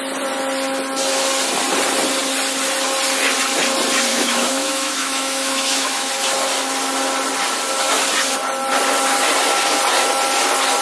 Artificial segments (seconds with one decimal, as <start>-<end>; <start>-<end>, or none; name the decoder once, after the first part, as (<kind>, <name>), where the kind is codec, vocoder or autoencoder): 4.1-6.1 (autoencoder, DAC-VAE)